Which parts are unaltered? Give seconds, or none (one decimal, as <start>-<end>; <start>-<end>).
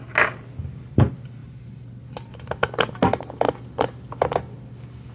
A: 0.0-5.1